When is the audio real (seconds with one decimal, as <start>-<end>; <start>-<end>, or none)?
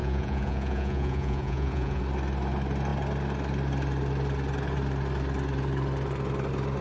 2.0-6.8